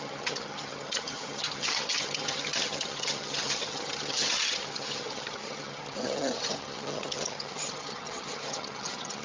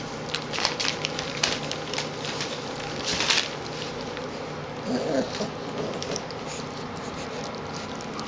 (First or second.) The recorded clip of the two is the second